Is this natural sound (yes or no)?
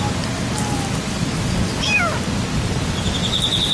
yes